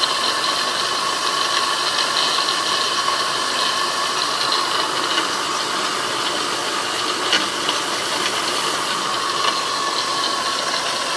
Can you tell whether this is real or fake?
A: real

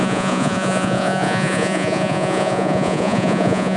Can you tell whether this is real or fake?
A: fake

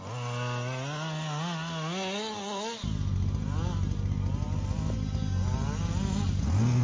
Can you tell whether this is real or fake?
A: real